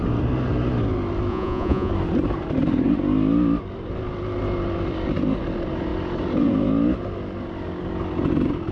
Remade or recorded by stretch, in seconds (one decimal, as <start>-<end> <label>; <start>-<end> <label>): 0.0-1.3 recorded; 1.3-1.9 remade; 1.9-8.7 recorded